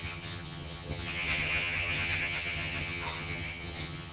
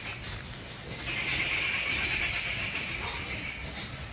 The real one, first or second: second